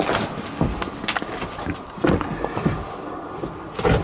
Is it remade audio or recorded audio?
recorded